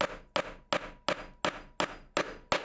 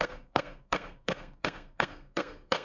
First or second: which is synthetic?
second